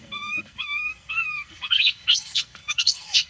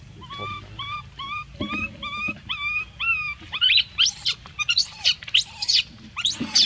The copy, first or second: first